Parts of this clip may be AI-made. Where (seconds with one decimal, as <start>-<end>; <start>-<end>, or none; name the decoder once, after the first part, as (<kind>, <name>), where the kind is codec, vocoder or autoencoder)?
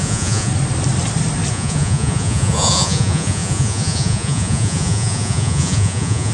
0.0-0.5 (vocoder, Vocos); 1.5-6.3